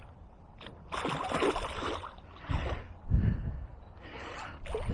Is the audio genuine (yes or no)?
yes